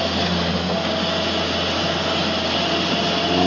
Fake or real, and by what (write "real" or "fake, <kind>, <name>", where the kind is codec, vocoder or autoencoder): real